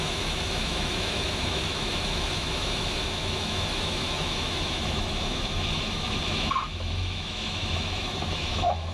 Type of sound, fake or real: fake